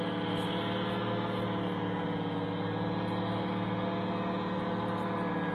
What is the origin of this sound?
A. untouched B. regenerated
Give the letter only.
A